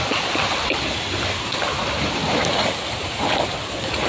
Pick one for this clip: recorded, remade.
recorded